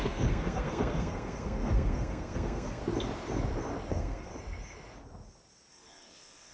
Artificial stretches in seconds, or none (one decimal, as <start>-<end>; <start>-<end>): 0.0-2.8; 3.9-4.3; 5.7-6.5